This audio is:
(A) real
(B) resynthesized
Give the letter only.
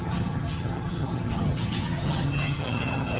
B